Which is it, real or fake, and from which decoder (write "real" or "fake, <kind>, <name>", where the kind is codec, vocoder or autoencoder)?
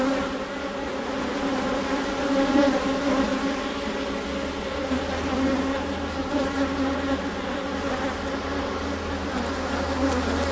real